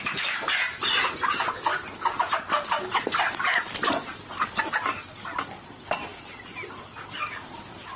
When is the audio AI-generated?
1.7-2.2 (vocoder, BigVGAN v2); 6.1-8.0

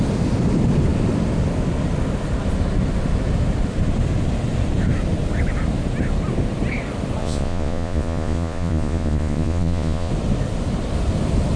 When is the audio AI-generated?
7.2-10.1 (vocoder, Vocos)

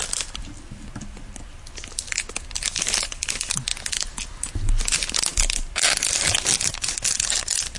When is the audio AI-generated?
none

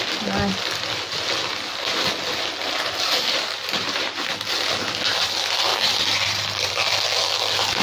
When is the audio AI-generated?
2.6-4.3 (vocoder, BigVGAN v2); 5.7-6.7

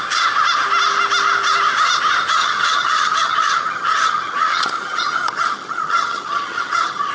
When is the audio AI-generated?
2.4-7.1 (vocoder, HiFi-GAN)

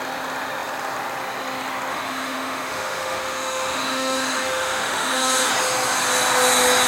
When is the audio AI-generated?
1.9-5.5 (autoencoder, DAC-VAE)